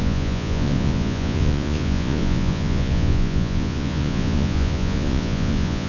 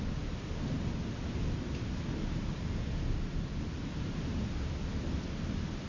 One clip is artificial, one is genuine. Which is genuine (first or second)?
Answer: second